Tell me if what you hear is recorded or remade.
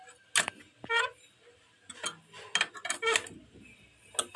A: recorded